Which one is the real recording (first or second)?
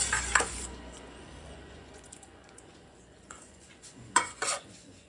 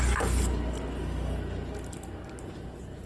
second